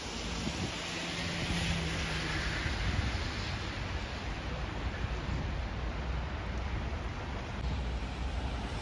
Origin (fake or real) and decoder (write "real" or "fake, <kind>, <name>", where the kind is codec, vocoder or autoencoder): real